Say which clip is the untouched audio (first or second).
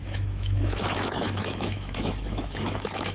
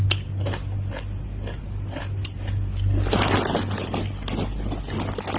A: second